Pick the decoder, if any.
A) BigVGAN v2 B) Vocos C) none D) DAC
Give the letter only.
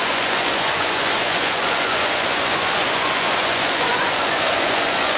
B